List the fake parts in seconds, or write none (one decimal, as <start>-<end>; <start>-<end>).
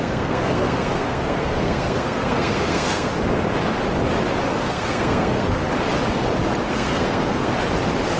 0.0-3.1; 4.5-5.6; 6.7-7.5